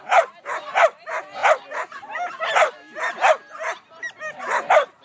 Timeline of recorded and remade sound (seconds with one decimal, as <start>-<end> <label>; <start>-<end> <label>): 0.0-1.4 remade; 1.4-4.4 recorded; 4.4-5.0 remade